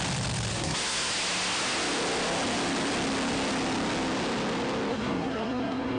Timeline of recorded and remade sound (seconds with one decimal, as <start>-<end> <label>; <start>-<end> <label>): 0.0-0.5 recorded; 0.5-1.1 remade; 1.1-4.9 recorded; 4.9-6.0 remade